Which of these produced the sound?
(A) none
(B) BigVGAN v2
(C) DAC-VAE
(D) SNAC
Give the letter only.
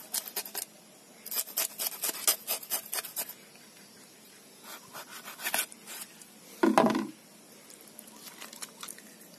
A